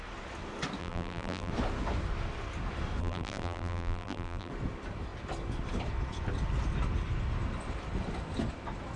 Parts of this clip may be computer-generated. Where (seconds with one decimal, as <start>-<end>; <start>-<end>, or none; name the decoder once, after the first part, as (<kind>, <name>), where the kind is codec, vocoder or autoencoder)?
0.8-1.5 (vocoder, BigVGAN v2); 3.0-4.5